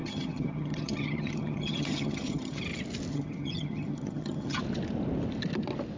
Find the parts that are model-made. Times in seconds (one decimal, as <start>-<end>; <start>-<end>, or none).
0.0-2.6; 3.1-4.6